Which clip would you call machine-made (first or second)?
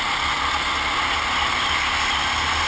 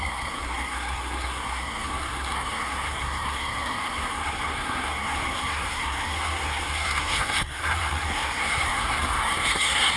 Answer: second